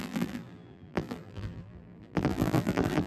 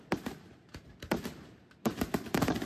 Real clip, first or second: second